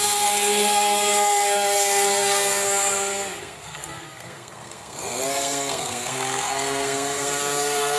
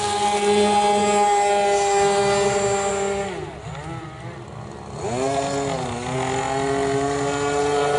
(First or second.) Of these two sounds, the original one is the second